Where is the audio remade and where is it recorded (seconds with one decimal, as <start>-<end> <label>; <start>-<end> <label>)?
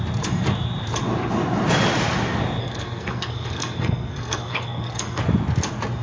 0.0-2.6 recorded; 2.6-5.2 remade; 5.2-6.0 recorded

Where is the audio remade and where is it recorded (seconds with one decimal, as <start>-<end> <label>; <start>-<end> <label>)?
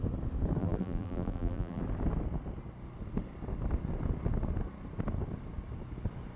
0.0-0.6 recorded; 0.6-1.8 remade; 1.8-6.4 recorded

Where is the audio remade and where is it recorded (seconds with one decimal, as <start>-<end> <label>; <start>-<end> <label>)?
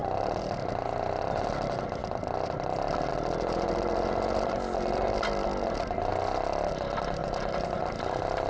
0.0-8.5 recorded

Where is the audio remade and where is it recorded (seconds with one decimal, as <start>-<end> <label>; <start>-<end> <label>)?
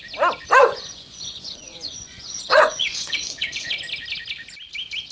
0.0-0.6 recorded; 0.6-3.7 remade; 3.7-5.1 recorded